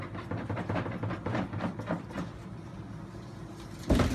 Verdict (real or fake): real